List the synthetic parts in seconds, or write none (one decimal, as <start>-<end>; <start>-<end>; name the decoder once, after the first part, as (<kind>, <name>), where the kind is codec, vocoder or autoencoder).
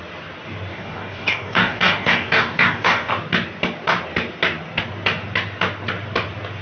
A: 0.7-3.1 (codec, DAC)